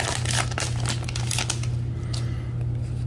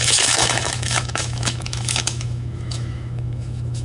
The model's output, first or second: second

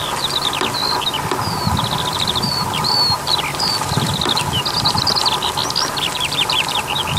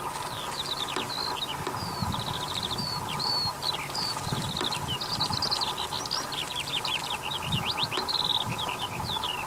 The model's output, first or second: first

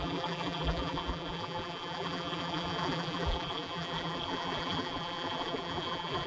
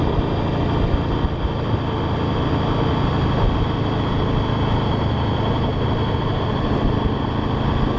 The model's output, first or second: first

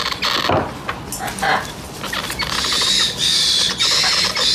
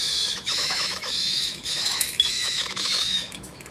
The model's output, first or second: second